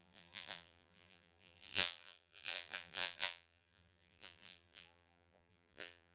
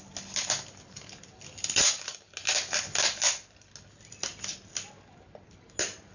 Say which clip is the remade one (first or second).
first